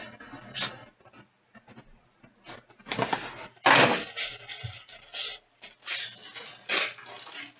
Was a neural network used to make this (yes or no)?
no